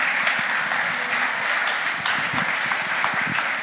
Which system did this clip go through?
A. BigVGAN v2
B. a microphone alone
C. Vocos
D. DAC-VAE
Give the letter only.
B